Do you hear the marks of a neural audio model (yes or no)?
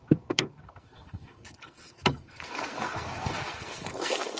yes